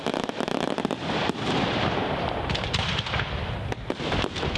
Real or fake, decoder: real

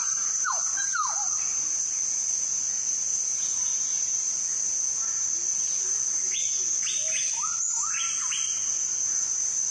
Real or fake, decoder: fake, vocoder, BigVGAN v2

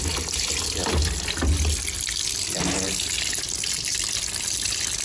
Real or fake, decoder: real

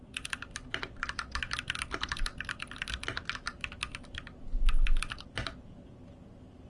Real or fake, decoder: real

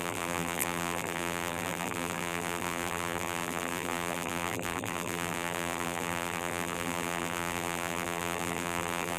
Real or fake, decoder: fake, vocoder, BigVGAN v2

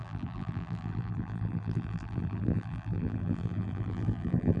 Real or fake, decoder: fake, vocoder, BigVGAN v2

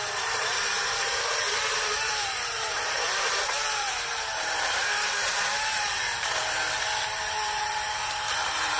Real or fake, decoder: fake, vocoder, BigVGAN v2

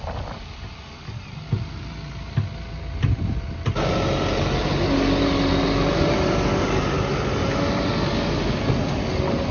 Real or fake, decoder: real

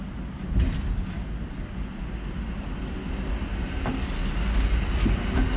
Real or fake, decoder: real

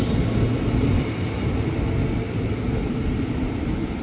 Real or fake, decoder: real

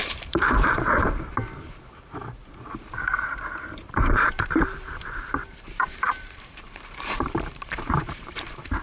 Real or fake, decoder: fake, vocoder, BigVGAN v2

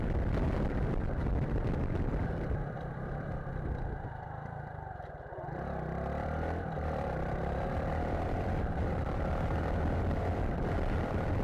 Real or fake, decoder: fake, vocoder, BigVGAN v2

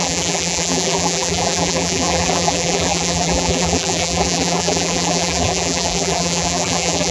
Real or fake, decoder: fake, vocoder, BigVGAN v2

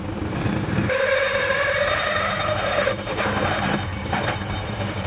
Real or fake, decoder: fake, vocoder, BigVGAN v2